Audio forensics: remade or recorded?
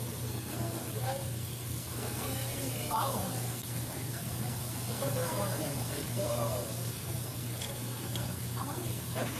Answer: remade